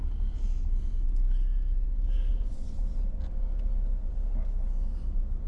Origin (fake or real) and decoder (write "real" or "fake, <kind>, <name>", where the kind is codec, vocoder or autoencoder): real